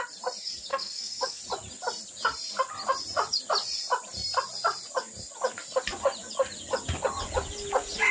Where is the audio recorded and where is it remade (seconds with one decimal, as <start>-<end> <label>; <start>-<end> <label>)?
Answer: 0.0-0.7 recorded; 0.7-1.4 remade; 1.4-8.1 recorded